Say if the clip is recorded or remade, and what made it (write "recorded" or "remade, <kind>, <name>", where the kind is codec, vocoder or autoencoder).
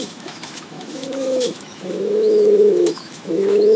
remade, autoencoder, DAC-VAE